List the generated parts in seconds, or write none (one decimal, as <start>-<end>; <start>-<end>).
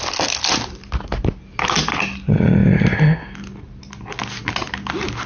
none